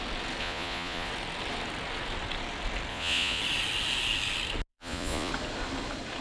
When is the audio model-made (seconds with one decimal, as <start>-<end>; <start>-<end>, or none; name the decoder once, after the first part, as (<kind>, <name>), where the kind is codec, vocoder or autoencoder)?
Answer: 0.4-1.1 (vocoder, Vocos); 2.9-3.4; 4.7-5.3

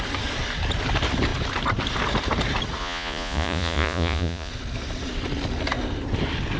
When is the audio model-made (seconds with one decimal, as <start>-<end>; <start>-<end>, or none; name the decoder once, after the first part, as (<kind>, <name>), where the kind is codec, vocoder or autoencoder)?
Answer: 2.8-4.5 (vocoder, Vocos)